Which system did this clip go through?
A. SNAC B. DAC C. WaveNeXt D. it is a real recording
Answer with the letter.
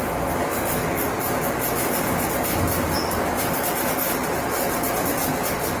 D